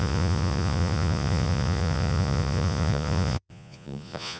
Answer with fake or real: fake